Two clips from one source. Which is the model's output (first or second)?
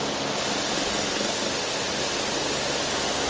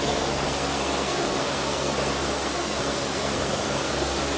second